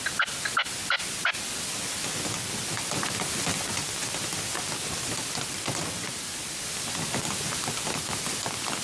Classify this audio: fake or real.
real